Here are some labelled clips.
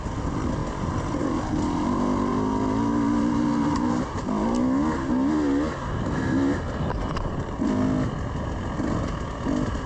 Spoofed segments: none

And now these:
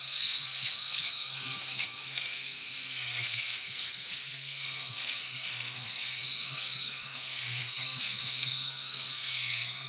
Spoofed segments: 0.0-9.9 (codec, SNAC)

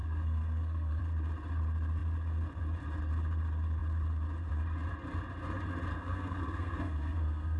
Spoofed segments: 0.0-1.0 (codec, SNAC); 5.9-7.6

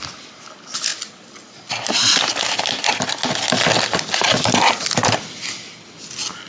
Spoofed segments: none

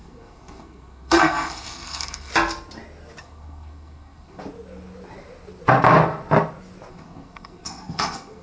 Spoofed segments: 0.0-2.3 (codec, SNAC); 3.2-4.4; 6.9-8.4

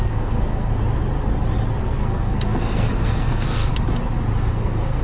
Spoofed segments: 0.0-0.7 (codec, SNAC); 1.8-3.7; 4.5-5.0

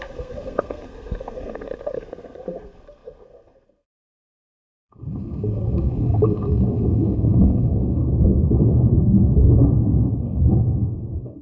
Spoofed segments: 0.0-11.4 (codec, SNAC)